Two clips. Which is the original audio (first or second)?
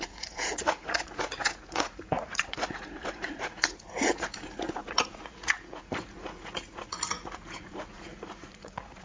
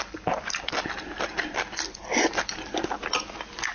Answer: second